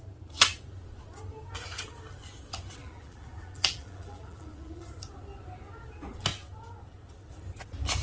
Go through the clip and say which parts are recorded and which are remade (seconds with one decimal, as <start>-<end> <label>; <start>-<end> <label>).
0.0-2.8 recorded; 2.8-4.9 remade; 4.9-8.0 recorded